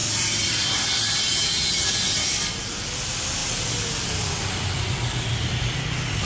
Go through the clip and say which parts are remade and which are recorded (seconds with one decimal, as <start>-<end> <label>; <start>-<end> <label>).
0.0-6.3 remade